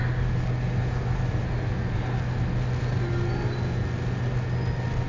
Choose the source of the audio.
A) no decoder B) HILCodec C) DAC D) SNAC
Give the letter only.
A